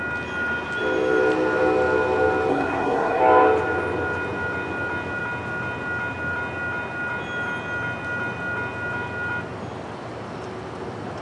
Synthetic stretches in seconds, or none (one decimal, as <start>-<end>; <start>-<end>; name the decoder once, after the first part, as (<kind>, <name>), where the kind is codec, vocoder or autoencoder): 2.5-3.2 (codec, SNAC)